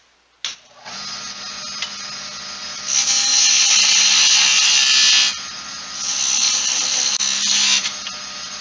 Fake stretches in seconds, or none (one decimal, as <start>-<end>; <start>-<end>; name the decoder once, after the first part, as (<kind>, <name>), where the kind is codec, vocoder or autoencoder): none